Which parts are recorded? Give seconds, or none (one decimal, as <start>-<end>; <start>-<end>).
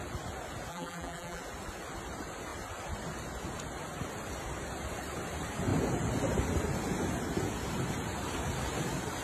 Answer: 0.0-0.7; 1.4-9.2